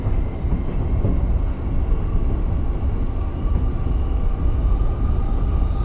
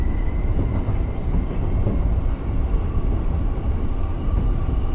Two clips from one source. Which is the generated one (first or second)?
second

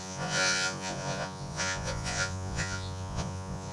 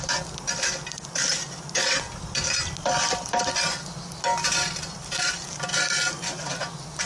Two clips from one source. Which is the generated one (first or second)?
first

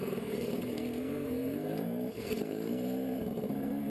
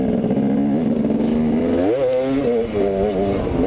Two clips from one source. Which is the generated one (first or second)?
first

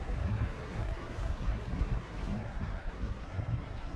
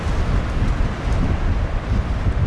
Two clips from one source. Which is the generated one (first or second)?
first